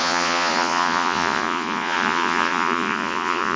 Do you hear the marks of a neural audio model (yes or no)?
yes